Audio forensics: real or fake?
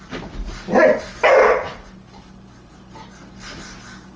real